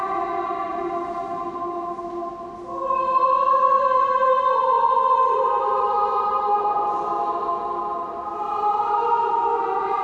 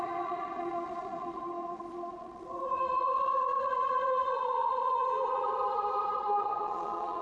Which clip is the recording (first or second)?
first